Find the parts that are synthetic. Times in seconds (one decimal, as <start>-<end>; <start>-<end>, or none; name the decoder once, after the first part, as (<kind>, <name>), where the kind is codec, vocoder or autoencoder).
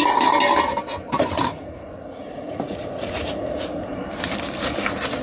0.9-4.0 (vocoder, Vocos)